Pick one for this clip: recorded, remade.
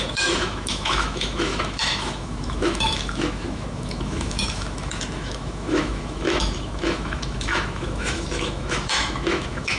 remade